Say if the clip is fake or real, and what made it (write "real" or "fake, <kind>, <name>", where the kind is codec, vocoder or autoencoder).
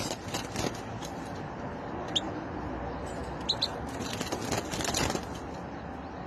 real